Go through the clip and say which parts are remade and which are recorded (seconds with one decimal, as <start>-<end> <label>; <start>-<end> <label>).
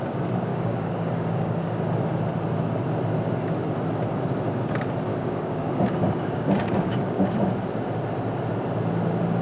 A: 0.0-0.5 recorded; 0.5-1.9 remade; 1.9-5.1 recorded; 5.1-7.3 remade; 7.3-9.4 recorded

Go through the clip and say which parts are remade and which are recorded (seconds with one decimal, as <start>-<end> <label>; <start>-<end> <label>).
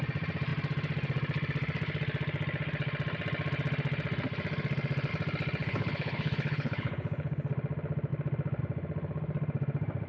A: 0.0-5.6 recorded; 5.6-7.5 remade; 7.5-10.1 recorded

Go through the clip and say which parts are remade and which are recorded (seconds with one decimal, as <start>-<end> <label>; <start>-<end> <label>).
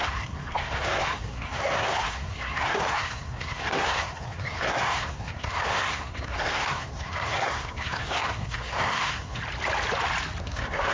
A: 0.0-9.4 remade; 9.4-10.4 recorded; 10.4-10.9 remade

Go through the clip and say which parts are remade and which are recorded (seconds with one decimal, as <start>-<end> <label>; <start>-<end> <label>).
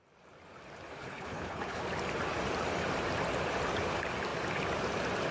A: 0.0-1.0 recorded; 1.0-1.8 remade; 1.8-5.3 recorded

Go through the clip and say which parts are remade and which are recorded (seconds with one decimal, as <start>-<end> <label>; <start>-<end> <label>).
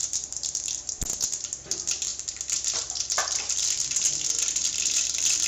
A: 0.0-5.5 recorded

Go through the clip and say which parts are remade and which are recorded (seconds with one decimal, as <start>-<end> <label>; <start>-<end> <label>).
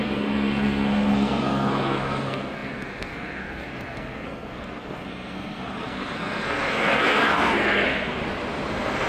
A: 0.0-8.2 remade; 8.2-8.7 recorded; 8.7-9.1 remade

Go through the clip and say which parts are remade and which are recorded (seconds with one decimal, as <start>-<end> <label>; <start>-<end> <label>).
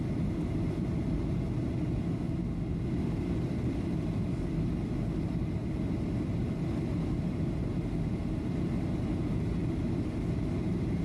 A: 0.0-11.0 recorded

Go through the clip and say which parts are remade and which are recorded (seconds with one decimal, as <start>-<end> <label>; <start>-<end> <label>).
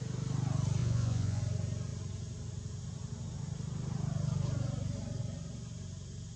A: 0.0-0.8 recorded; 0.8-1.4 remade; 1.4-6.4 recorded